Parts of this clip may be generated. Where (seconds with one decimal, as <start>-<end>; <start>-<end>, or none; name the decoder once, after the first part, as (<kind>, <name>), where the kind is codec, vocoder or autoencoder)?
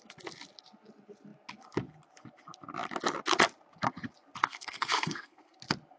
4.4-5.6 (codec, SNAC)